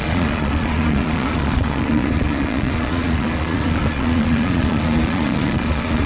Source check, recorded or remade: remade